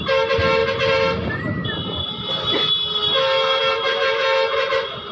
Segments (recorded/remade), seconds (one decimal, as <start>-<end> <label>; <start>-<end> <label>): 0.0-5.1 recorded